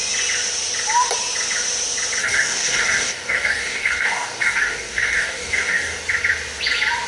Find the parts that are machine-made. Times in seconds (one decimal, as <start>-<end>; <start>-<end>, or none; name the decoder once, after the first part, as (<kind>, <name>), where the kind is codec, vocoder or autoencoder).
2.2-6.0 (codec, DAC)